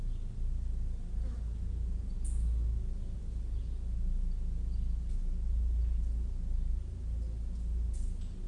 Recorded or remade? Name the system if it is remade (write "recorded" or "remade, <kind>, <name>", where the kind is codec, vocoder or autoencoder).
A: recorded